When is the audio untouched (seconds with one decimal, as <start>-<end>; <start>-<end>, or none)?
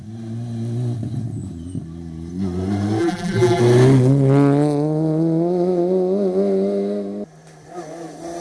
0.0-3.0; 3.6-8.4